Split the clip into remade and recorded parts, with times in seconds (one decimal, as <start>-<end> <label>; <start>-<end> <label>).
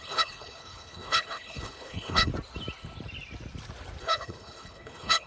0.0-2.3 remade; 2.3-4.0 recorded; 4.0-5.3 remade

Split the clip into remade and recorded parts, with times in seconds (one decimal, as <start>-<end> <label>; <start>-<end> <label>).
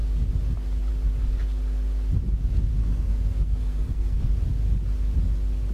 0.0-2.8 recorded; 2.8-4.3 remade; 4.3-5.7 recorded